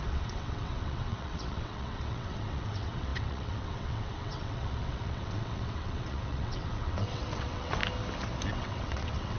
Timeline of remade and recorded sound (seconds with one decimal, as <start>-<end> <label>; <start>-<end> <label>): 0.0-7.8 remade; 7.8-8.5 recorded; 8.5-9.4 remade